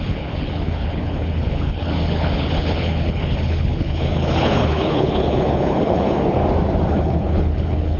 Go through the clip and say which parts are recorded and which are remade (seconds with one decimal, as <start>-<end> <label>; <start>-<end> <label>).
0.0-6.4 remade; 6.4-6.9 recorded; 6.9-8.0 remade